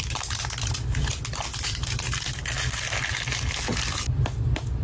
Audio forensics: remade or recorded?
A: recorded